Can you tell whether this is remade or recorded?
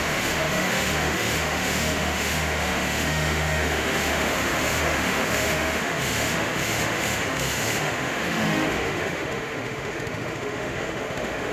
remade